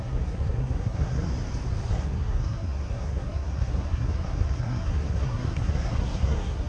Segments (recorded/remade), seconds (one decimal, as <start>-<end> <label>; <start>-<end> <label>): 0.0-1.3 remade; 1.3-1.9 recorded; 1.9-6.7 remade

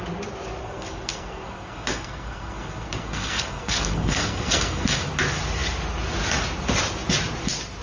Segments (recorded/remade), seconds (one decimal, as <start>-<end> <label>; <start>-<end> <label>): 0.0-0.6 recorded; 0.6-5.1 remade; 5.1-7.8 recorded